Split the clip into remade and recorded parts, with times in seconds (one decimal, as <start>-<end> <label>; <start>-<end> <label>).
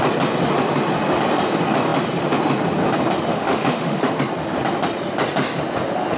0.0-3.3 recorded; 3.3-4.1 remade; 4.1-6.2 recorded